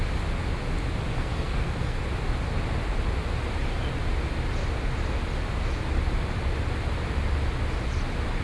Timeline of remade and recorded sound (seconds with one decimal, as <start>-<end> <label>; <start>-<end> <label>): 0.0-1.1 recorded; 1.1-2.0 remade; 2.0-8.4 recorded